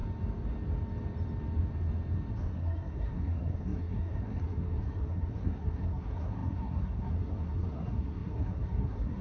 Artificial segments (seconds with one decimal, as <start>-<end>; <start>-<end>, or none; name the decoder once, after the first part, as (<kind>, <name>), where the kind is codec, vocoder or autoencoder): 2.3-9.2 (codec, SNAC)